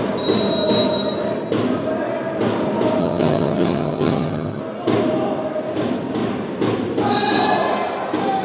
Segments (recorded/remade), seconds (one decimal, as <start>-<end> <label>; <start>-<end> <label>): 0.0-3.0 recorded; 3.0-4.6 remade; 4.6-8.4 recorded